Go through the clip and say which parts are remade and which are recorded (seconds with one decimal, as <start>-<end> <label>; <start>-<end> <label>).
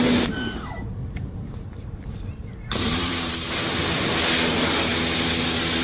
0.0-1.0 recorded; 1.0-3.3 remade; 3.3-5.8 recorded